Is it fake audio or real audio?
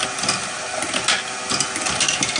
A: real